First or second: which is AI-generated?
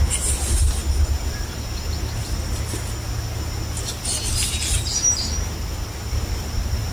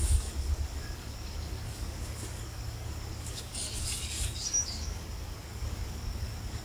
second